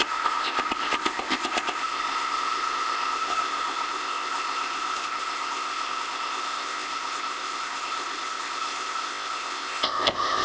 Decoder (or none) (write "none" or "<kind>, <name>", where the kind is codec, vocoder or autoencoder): codec, ZipCodec